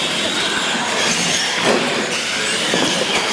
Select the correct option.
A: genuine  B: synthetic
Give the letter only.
A